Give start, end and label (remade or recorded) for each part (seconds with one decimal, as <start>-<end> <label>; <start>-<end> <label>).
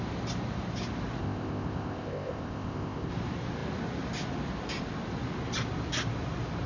0.0-1.2 recorded; 1.2-3.1 remade; 3.1-6.7 recorded